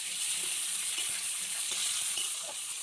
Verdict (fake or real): fake